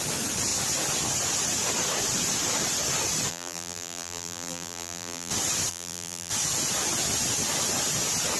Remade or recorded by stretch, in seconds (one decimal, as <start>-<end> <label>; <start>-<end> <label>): 0.0-3.3 recorded; 3.3-5.3 remade; 5.3-5.7 recorded; 5.7-6.3 remade; 6.3-8.4 recorded